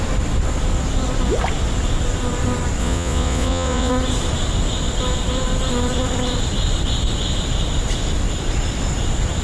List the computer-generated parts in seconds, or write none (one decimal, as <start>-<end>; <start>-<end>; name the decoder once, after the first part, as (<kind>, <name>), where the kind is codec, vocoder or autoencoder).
2.8-3.9 (vocoder, Vocos)